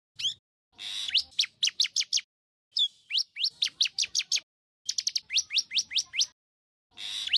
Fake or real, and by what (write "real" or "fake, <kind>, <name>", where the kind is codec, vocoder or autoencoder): real